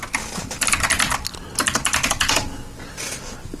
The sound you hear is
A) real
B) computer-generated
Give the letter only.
A